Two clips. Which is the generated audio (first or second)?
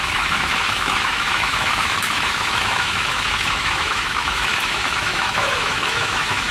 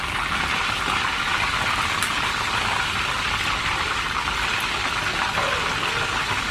first